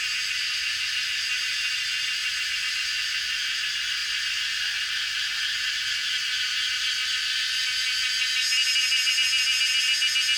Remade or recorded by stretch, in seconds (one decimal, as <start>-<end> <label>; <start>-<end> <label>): 0.0-2.2 recorded; 2.2-2.9 remade; 2.9-10.4 recorded